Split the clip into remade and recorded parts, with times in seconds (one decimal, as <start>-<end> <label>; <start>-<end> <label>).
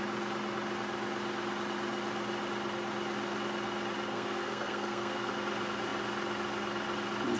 0.0-4.1 recorded; 4.1-5.3 remade; 5.3-7.4 recorded